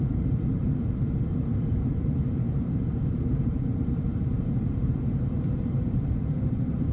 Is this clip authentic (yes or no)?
no